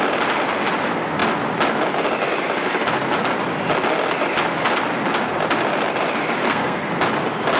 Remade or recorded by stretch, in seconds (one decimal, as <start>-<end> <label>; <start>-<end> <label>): 0.0-6.4 recorded; 6.4-6.9 remade; 6.9-7.6 recorded